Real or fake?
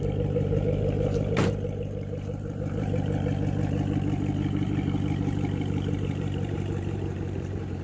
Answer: fake